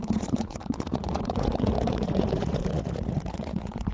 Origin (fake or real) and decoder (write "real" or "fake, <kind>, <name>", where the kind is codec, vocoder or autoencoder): fake, vocoder, Vocos